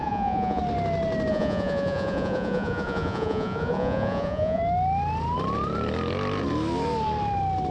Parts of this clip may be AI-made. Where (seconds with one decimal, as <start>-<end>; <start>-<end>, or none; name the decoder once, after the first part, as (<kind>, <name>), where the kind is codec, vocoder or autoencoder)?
0.0-0.6 (vocoder, Vocos); 1.3-4.6